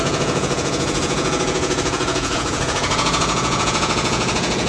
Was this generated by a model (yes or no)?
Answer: yes